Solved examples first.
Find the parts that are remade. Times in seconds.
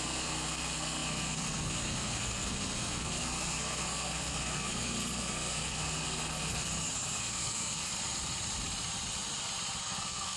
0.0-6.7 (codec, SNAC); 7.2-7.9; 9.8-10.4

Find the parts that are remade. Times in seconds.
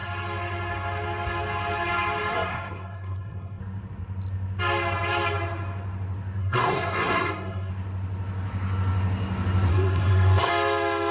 2.3-3.6 (codec, SNAC); 6.4-7.7; 9.7-10.5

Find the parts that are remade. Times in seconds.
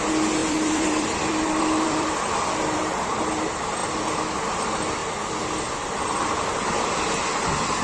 0.4-3.0 (vocoder, BigVGAN v2)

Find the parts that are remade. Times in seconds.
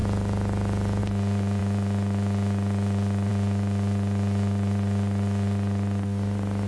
none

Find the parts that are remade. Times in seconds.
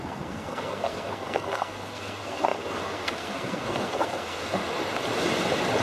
0.0-4.6 (codec, SNAC)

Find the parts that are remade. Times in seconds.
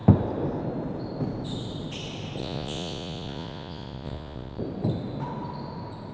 2.4-4.6 (vocoder, Vocos)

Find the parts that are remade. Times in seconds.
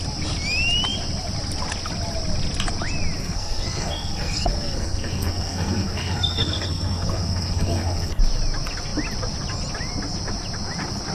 3.2-8.2 (codec, SNAC)